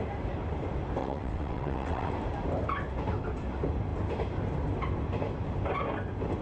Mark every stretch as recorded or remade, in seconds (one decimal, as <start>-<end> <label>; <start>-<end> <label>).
0.0-1.0 recorded; 1.0-2.1 remade; 2.1-6.4 recorded